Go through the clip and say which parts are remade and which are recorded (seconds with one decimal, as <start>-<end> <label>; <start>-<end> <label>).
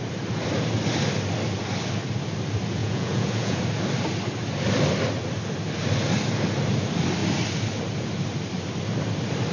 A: 0.0-2.8 recorded; 2.8-3.6 remade; 3.6-9.5 recorded